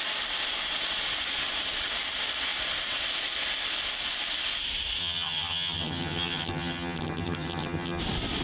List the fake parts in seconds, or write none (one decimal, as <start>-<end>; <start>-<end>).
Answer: 5.0-8.0

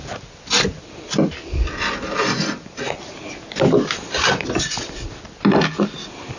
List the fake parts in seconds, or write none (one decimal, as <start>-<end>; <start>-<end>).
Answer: none

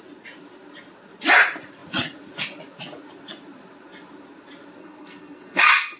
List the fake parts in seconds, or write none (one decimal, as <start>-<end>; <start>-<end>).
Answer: 4.8-6.0

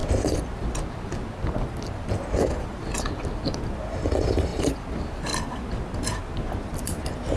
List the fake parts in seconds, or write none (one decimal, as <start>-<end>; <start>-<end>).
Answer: none

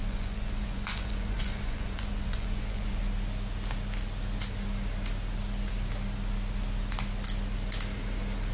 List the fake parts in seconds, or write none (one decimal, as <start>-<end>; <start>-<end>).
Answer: 0.0-3.0

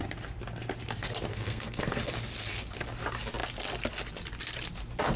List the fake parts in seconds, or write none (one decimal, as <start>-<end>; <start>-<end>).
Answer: 1.3-2.1

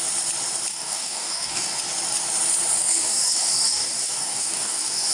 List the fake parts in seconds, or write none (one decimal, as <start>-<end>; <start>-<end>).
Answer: 0.7-1.7; 2.8-5.1

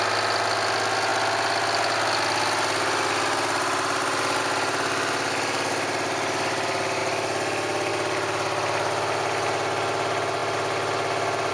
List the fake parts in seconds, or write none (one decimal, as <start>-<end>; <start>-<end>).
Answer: none